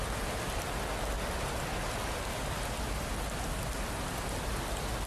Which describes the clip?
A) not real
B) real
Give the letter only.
B